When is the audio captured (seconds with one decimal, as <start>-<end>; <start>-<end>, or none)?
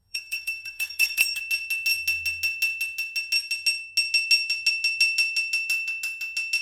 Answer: 1.4-6.6